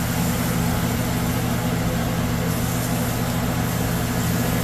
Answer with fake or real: real